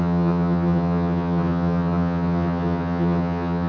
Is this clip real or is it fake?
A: fake